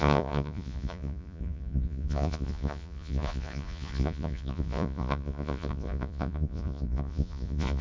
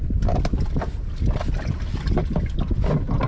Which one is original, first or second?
second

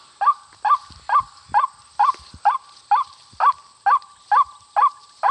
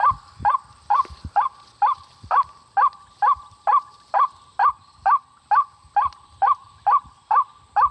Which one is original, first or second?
first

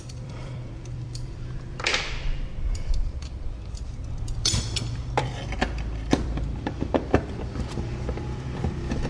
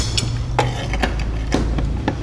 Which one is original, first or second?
second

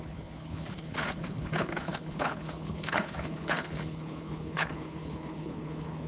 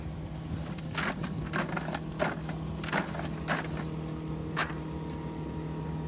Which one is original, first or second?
second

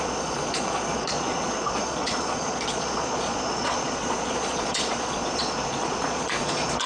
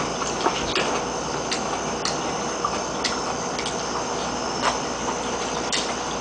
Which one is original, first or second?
second